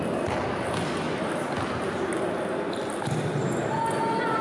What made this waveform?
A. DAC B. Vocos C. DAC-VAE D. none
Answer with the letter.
D